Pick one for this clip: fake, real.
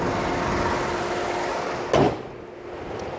real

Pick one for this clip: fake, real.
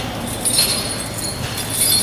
real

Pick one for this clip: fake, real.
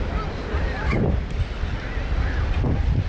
real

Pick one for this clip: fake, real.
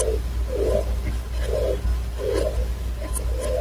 real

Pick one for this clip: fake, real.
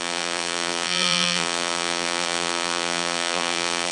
fake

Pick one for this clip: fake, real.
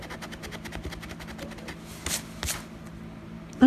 real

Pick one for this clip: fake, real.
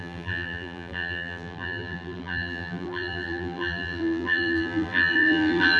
fake